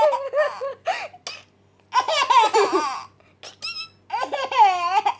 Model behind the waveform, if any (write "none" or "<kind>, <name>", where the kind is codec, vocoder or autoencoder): none